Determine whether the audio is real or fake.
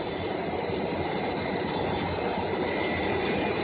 fake